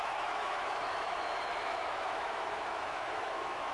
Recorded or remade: remade